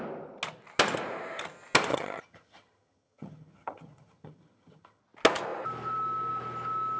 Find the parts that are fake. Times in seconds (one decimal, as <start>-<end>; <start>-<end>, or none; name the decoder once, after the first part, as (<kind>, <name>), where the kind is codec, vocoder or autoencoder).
1.9-5.0 (vocoder, HiFi-GAN)